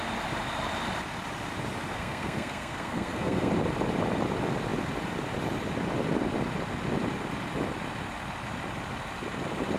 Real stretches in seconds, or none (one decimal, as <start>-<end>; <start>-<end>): 0.0-1.9; 3.5-9.8